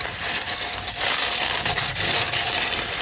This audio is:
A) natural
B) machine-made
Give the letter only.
A